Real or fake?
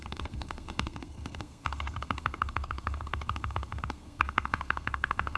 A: fake